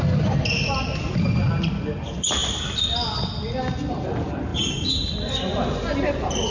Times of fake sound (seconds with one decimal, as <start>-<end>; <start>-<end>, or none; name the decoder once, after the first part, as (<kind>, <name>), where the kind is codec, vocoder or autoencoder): none

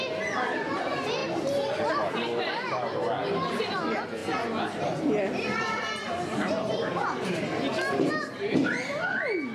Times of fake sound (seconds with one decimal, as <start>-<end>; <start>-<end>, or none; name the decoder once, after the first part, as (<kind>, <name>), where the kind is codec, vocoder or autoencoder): none